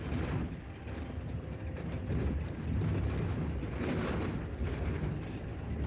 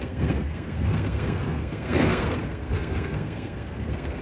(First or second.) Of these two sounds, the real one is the first